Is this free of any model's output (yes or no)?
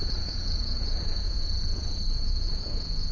no